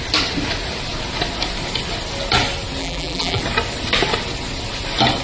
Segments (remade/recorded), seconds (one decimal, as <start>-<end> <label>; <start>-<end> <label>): 0.0-2.8 recorded; 2.8-3.4 remade; 3.4-5.2 recorded